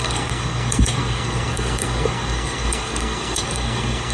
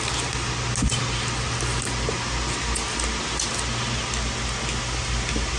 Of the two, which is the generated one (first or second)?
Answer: first